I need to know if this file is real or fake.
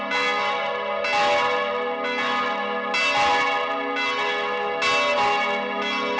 real